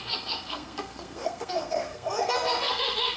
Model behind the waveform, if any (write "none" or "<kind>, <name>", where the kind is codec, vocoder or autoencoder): codec, SNAC